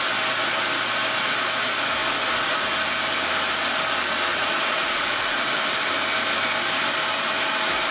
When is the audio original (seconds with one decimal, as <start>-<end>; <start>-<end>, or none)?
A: 0.0-4.3; 5.6-7.9